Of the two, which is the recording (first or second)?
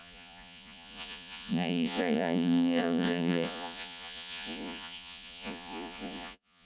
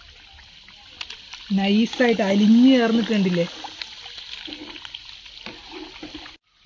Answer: second